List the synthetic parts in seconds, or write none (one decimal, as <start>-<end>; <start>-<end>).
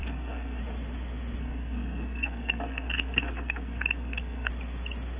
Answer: 0.0-0.6; 1.4-4.5